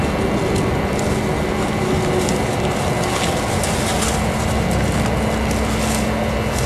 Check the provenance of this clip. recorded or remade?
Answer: recorded